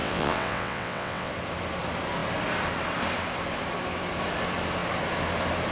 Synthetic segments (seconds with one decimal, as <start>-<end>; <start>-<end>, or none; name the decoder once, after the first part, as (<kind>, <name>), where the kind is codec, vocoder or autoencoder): 0.0-1.3 (vocoder, WaveNeXt)